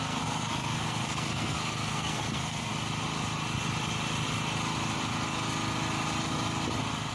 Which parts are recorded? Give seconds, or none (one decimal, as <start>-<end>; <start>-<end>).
2.7-7.1